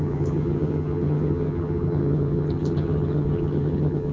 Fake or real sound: fake